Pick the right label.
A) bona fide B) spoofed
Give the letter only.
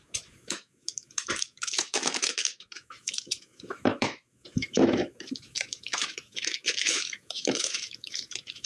B